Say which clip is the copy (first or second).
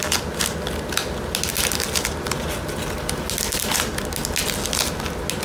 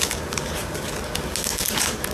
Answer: second